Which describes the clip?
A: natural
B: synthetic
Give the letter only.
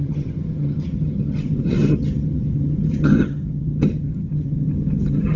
B